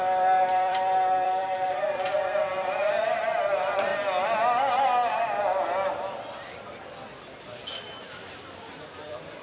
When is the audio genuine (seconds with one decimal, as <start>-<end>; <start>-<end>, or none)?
3.9-8.0